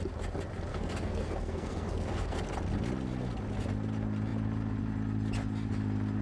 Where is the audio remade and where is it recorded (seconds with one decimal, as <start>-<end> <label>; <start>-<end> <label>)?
0.0-0.7 recorded; 0.7-2.4 remade; 2.4-6.2 recorded